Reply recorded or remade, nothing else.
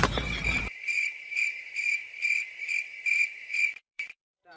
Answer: remade